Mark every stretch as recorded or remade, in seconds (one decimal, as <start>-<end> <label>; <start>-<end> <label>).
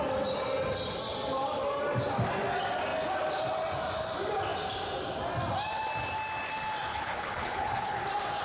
0.0-6.9 recorded; 6.9-8.0 remade; 8.0-8.4 recorded